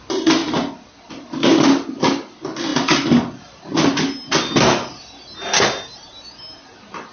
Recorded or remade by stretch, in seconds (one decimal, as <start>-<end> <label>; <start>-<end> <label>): 0.0-7.1 recorded